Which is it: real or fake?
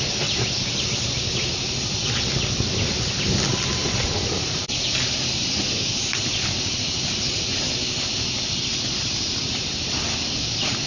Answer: real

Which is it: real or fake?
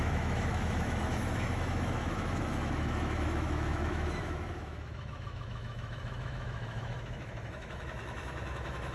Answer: fake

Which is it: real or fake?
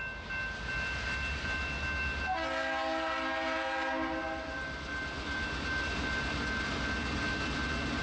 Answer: real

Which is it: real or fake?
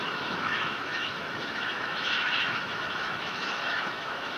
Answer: fake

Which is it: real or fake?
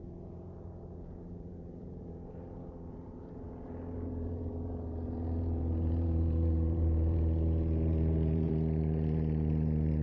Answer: fake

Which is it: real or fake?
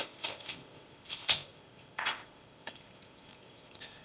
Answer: fake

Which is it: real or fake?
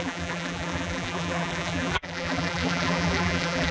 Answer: fake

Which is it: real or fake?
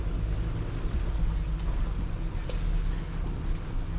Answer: real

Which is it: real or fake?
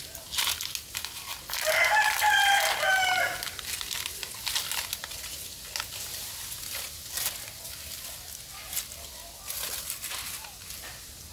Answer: real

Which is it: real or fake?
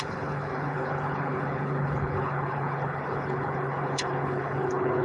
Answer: fake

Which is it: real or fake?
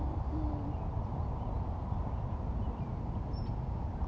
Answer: real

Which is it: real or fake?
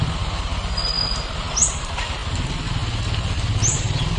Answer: real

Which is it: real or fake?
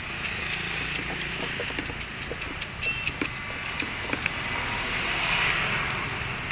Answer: real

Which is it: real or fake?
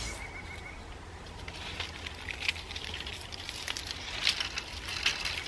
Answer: real